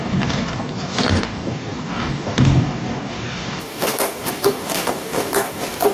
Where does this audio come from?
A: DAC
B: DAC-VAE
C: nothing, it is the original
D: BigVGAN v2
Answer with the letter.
A